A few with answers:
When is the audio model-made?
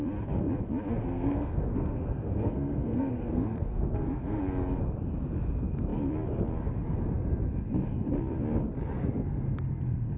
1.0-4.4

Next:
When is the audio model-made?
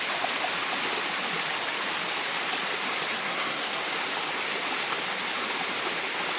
3.2-3.8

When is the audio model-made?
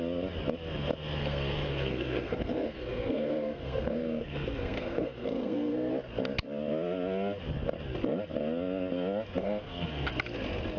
1.2-5.9; 9.4-10.1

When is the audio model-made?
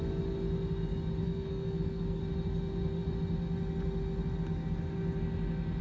1.2-2.2